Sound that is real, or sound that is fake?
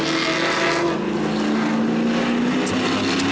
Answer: real